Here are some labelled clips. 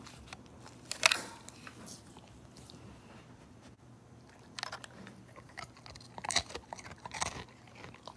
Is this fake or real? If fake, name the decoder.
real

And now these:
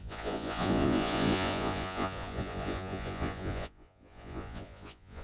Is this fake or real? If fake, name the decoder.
fake, vocoder, Vocos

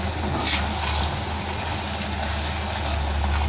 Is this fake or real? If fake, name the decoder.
real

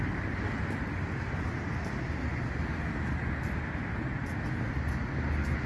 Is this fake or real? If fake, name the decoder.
real